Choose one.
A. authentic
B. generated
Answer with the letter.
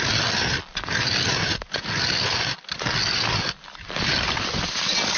A